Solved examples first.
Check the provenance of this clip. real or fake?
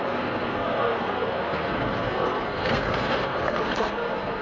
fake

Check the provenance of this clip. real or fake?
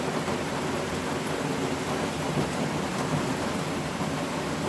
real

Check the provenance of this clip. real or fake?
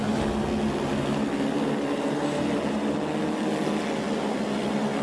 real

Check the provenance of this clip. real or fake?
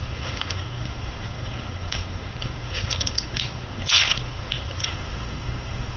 fake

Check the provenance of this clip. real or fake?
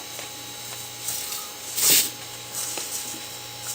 fake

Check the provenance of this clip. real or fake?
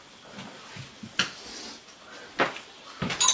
real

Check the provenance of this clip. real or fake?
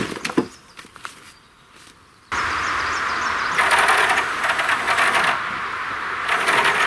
real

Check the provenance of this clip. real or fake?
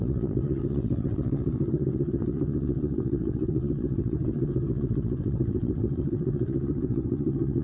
fake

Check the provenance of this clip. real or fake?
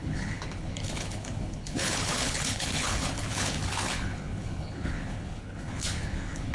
fake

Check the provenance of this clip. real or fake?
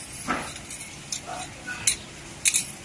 real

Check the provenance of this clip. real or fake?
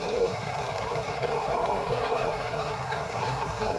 fake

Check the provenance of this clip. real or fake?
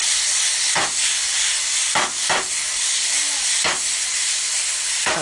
real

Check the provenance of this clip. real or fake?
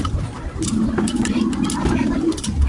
fake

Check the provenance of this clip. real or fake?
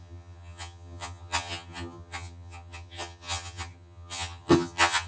fake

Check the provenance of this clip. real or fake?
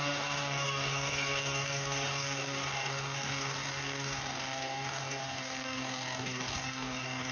fake